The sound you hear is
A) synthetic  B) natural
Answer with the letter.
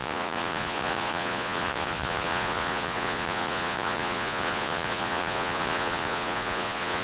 A